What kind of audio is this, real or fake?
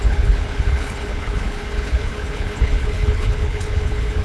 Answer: fake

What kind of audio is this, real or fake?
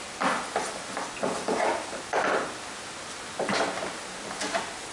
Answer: real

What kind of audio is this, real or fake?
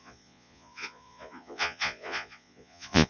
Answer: fake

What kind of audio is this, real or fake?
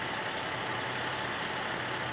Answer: real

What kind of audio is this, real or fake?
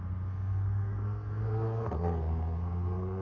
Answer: fake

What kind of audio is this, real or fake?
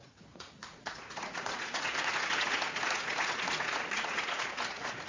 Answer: fake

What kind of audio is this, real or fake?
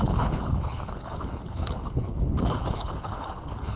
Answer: fake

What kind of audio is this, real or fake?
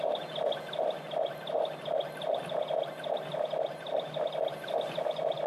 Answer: real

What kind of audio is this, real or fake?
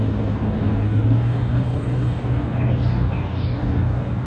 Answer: fake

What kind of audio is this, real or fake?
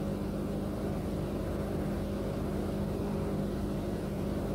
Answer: real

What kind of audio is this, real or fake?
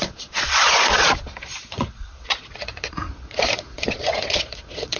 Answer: fake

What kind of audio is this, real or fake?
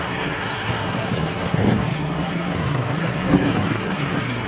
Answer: fake